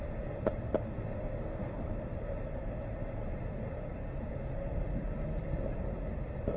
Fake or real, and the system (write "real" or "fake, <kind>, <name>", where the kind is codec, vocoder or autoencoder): real